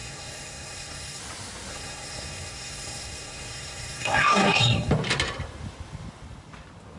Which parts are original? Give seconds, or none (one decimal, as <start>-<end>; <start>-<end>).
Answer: 1.2-1.7; 4.9-7.0